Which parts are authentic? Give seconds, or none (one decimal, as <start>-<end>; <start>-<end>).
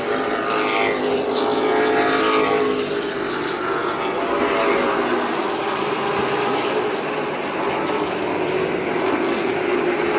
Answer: 0.0-10.2